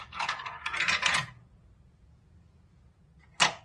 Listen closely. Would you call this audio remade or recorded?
remade